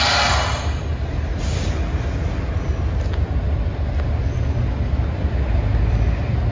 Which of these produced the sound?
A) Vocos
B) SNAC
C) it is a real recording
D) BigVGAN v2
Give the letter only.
C